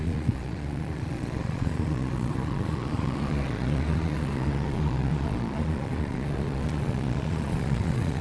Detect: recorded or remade remade